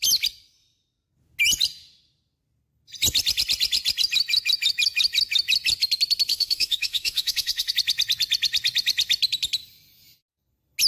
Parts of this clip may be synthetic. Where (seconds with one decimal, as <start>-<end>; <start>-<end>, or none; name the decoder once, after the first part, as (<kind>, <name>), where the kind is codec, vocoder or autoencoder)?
6.3-7.7 (autoencoder, DAC-VAE)